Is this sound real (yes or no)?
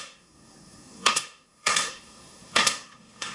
no